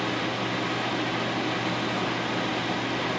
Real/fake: real